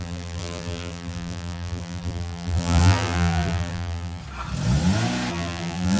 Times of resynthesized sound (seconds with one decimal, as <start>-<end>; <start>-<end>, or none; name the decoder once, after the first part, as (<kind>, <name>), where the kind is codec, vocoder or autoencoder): 0.0-4.2 (vocoder, BigVGAN v2); 5.3-6.0